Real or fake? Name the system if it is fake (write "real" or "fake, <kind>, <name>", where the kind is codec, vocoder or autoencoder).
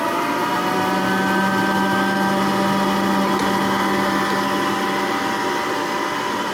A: real